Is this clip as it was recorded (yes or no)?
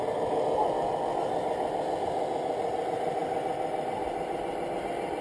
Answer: yes